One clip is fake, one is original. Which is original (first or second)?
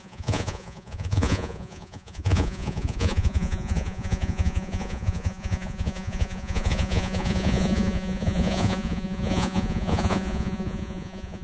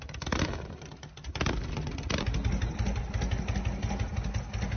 second